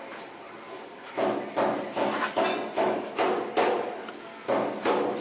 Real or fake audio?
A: real